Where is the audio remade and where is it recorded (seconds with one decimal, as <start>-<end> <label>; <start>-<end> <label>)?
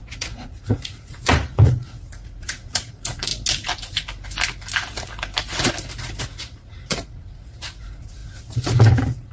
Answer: 0.0-3.3 remade; 3.3-6.2 recorded; 6.2-9.3 remade